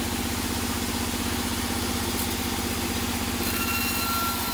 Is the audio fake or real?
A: real